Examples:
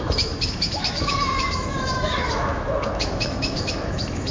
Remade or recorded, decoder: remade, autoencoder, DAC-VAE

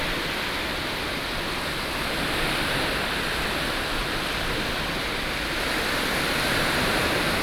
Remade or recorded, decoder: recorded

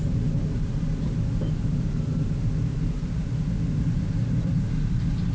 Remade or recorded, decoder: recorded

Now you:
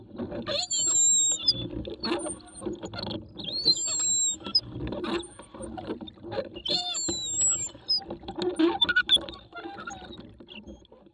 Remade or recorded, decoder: recorded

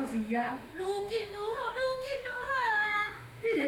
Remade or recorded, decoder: remade, autoencoder, DAC-VAE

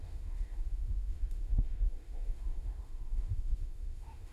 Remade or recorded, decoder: remade, autoencoder, DAC-VAE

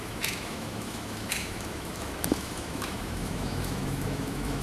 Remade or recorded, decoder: remade, autoencoder, DAC-VAE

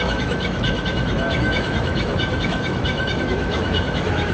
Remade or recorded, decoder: remade, autoencoder, DAC-VAE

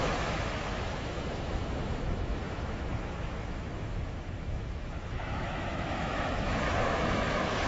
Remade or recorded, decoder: remade, autoencoder, DAC-VAE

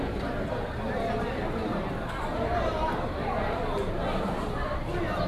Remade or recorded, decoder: recorded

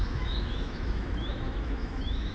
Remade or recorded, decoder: remade, autoencoder, DAC-VAE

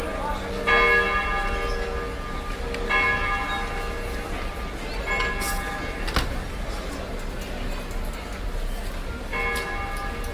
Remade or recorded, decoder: recorded